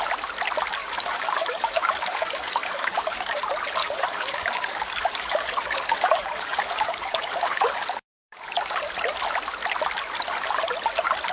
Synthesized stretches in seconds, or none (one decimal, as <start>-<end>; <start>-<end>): 0.8-3.4; 3.8-8.7